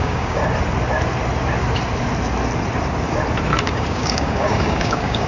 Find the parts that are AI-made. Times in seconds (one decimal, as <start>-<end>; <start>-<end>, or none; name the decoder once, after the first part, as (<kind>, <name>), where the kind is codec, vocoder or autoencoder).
0.0-0.4 (codec, DAC); 3.6-5.3